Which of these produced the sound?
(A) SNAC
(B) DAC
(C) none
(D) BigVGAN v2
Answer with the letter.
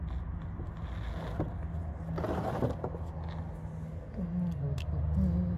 C